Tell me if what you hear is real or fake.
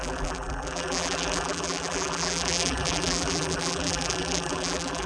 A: fake